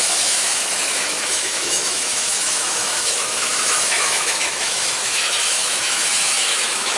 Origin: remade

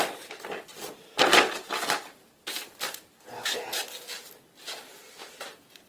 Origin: recorded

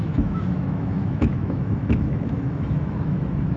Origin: remade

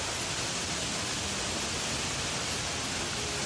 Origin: recorded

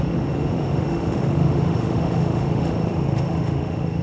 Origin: remade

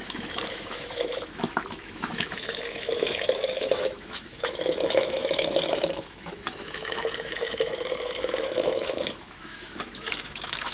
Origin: remade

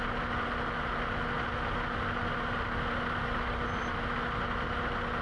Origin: recorded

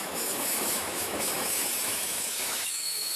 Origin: remade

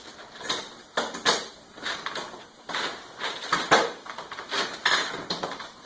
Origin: recorded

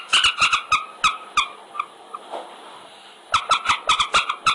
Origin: recorded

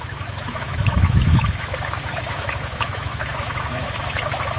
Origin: remade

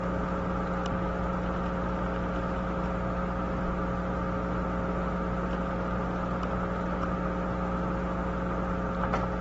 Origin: recorded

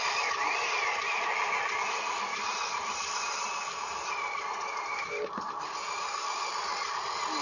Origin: recorded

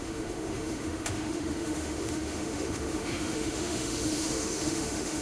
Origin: remade